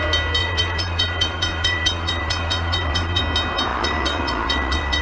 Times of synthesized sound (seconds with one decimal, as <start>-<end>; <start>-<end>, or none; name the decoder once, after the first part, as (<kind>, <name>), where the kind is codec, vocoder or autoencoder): 0.4-3.2 (vocoder, Vocos); 3.7-5.0